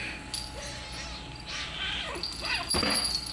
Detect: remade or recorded recorded